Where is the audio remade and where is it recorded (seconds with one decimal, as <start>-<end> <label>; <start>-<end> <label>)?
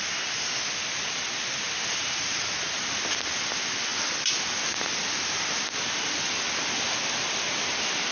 0.0-8.1 recorded